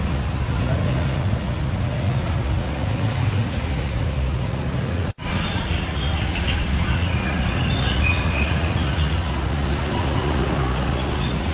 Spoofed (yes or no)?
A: yes